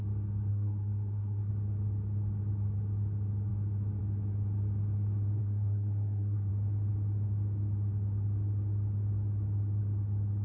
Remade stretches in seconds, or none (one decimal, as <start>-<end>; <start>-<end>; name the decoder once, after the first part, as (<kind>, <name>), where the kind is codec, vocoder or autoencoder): 0.5-1.5 (codec, SNAC); 5.4-6.5